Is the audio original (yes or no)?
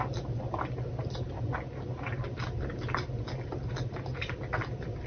yes